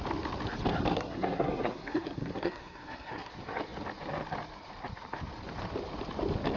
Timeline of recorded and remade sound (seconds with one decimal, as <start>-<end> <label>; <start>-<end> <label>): 0.0-0.9 recorded; 0.9-3.3 remade; 3.3-6.6 recorded